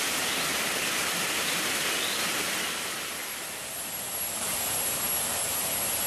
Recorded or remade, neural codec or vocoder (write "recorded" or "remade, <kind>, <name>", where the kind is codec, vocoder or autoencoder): recorded